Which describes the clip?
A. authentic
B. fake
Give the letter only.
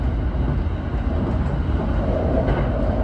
A